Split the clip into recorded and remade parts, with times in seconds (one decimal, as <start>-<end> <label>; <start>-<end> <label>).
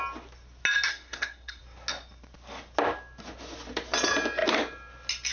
0.0-0.9 recorded; 0.9-1.6 remade; 1.6-5.3 recorded